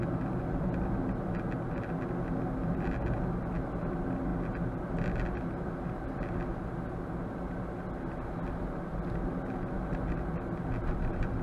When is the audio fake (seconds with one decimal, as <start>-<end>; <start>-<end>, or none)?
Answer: none